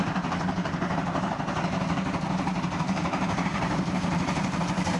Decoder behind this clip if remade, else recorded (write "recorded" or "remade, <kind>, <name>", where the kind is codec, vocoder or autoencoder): remade, vocoder, BigVGAN v2